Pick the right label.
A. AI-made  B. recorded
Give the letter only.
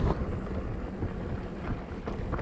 B